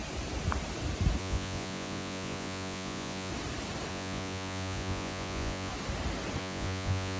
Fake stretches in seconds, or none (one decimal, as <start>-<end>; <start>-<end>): 1.2-3.3; 3.9-5.7; 6.4-7.2